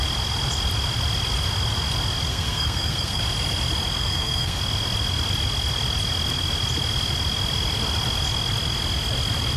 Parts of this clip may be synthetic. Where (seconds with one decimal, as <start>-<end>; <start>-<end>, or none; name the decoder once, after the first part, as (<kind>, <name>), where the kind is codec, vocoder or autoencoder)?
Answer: 2.3-3.2 (codec, SNAC); 4.0-4.6